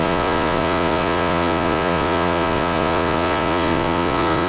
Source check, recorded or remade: remade